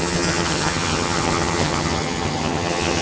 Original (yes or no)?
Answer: no